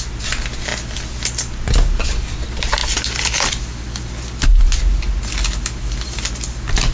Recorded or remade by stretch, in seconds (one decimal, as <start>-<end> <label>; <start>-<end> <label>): 0.0-6.9 recorded